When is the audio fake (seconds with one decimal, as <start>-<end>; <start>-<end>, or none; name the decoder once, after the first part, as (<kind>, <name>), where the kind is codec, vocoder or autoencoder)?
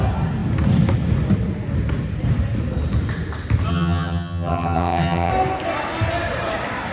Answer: 3.7-5.3 (vocoder, HiFi-GAN)